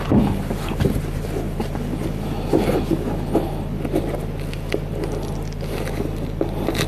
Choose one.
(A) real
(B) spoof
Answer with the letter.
B